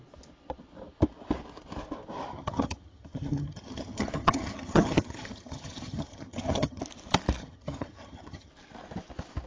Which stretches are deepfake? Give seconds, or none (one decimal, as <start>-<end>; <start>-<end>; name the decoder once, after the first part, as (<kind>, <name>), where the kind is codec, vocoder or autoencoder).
2.3-6.8 (vocoder, HiFi-GAN); 7.4-8.5